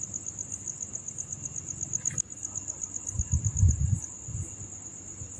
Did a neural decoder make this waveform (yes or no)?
no